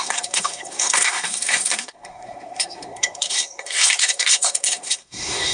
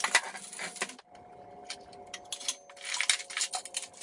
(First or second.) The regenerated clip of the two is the first